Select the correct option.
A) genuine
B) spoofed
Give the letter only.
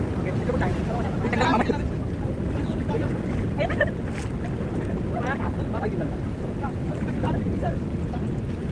A